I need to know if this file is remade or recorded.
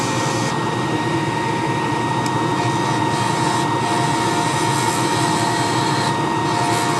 recorded